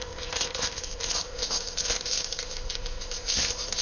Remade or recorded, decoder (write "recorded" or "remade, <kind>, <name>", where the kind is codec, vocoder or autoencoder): remade, codec, ZipCodec